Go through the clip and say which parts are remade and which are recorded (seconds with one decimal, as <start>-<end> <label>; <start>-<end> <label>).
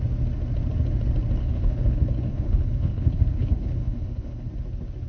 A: 0.0-1.4 recorded; 1.4-4.5 remade; 4.5-5.1 recorded